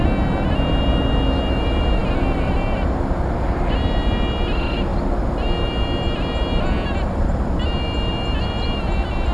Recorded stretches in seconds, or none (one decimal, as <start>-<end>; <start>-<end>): 0.0-9.3